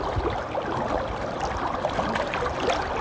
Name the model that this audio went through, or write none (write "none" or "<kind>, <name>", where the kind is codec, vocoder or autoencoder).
none